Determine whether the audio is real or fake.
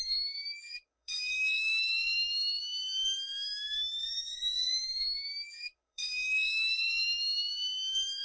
fake